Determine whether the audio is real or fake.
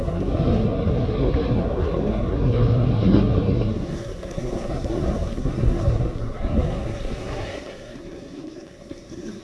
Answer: fake